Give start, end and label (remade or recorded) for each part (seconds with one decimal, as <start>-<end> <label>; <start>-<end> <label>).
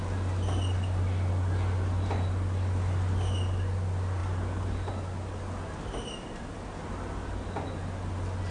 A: 0.0-8.5 recorded